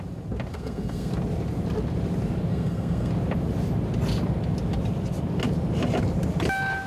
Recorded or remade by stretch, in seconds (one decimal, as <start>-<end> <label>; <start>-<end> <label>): 0.0-0.5 recorded; 0.5-1.1 remade; 1.1-2.5 recorded; 2.5-3.1 remade; 3.1-6.9 recorded